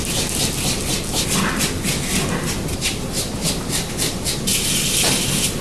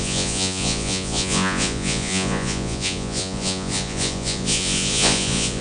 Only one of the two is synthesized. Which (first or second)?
second